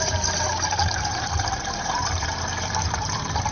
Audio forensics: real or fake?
fake